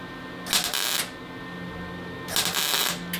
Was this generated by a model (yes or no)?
no